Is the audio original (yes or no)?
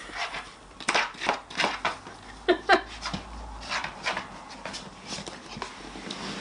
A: yes